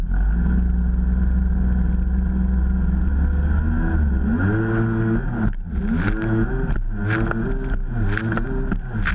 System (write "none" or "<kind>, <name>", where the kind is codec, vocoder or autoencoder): none